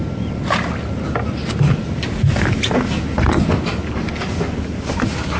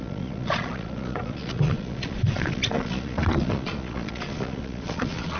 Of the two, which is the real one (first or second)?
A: first